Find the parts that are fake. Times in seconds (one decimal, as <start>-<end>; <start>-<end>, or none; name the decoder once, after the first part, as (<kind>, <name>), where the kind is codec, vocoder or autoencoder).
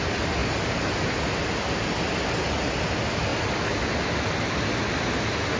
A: none